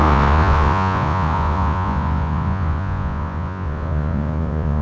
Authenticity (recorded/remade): remade